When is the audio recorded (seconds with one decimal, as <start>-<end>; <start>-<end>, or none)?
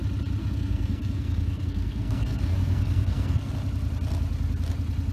0.0-0.4; 3.5-5.1